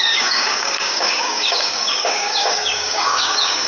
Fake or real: fake